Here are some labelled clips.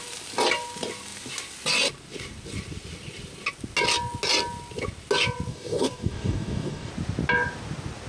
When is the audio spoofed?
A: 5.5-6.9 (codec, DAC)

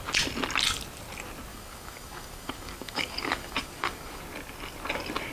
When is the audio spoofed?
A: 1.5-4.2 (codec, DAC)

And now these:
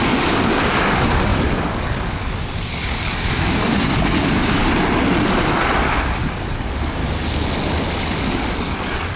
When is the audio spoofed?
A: 0.0-4.6 (codec, DAC); 6.5-7.0; 8.0-9.2

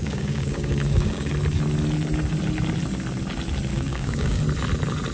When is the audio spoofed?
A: 0.0-1.3 (codec, DAC); 3.7-4.4